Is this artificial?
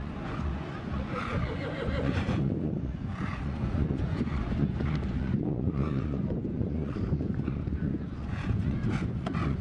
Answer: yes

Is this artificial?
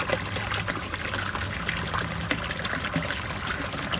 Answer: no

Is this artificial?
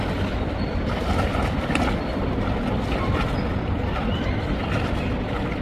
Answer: no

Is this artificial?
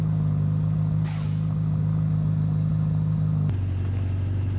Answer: no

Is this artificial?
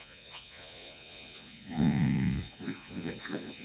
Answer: yes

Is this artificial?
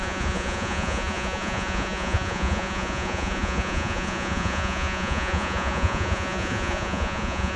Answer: yes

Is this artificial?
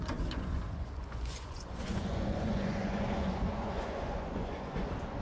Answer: yes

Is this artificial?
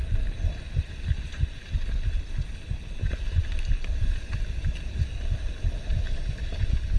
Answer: no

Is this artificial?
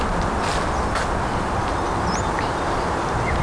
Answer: no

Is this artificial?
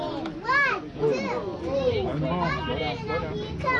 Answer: no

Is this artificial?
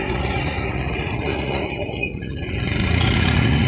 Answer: yes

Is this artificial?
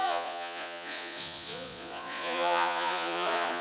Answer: yes